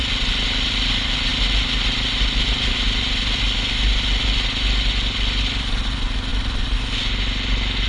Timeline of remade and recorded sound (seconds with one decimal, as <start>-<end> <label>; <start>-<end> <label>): 0.0-7.9 recorded